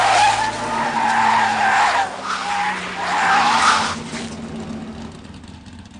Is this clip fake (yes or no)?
no